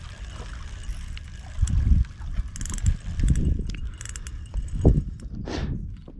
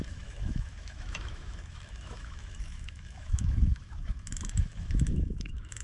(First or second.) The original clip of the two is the first